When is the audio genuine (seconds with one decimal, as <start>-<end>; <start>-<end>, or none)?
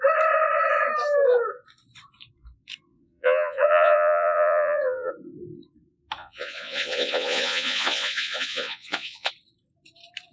0.0-2.9; 5.1-6.2; 9.3-10.3